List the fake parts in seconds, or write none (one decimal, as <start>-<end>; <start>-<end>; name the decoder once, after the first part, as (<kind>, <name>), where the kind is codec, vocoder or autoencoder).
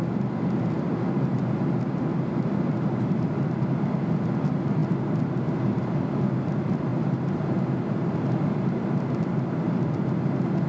6.9-7.8 (vocoder, BigVGAN v2)